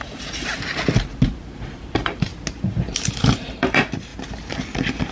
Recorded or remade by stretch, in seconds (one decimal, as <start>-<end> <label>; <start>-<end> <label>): 0.0-0.5 remade; 0.5-1.8 recorded; 1.8-2.3 remade; 2.3-3.1 recorded; 3.1-4.1 remade; 4.1-5.1 recorded